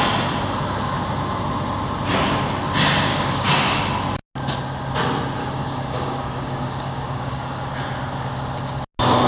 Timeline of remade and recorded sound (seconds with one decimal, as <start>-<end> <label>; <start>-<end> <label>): 0.0-3.1 recorded; 3.1-3.8 remade; 3.8-5.4 recorded; 5.4-7.7 remade; 7.7-9.3 recorded